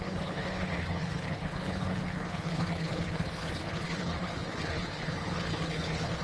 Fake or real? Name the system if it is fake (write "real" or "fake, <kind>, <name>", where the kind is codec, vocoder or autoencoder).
fake, codec, HILCodec